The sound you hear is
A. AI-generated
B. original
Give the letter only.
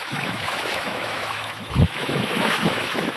A